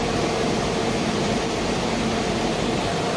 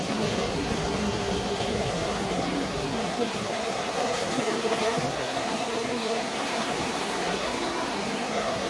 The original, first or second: first